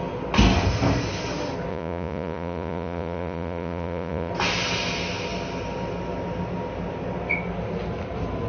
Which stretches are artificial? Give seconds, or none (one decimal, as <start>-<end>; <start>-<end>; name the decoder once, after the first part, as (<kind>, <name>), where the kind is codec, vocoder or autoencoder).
1.7-4.3 (vocoder, Vocos)